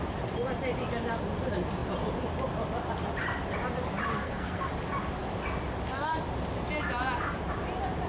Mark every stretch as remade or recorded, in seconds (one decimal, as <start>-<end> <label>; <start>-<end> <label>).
0.0-4.1 recorded; 4.1-4.7 remade; 4.7-8.1 recorded